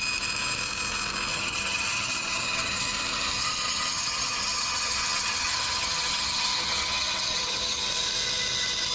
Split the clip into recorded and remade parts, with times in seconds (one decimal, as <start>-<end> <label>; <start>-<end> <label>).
0.0-1.3 recorded; 1.3-2.8 remade; 2.8-3.4 recorded; 3.4-7.8 remade; 7.8-8.9 recorded